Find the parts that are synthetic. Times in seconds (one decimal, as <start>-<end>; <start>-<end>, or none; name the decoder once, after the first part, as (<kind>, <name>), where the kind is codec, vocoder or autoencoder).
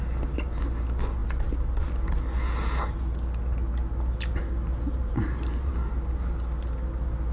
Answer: 5.0-5.7 (vocoder, BigVGAN v2)